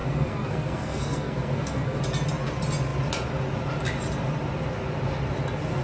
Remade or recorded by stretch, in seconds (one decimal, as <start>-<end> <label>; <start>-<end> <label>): 0.0-2.0 remade; 2.0-5.8 recorded